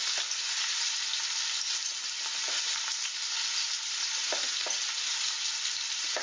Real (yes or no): yes